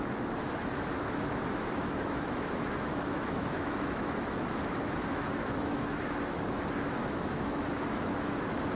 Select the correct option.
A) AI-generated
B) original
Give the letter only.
A